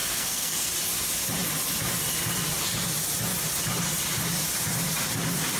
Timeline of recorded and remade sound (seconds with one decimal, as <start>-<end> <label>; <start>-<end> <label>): 0.0-0.7 remade; 0.7-5.6 recorded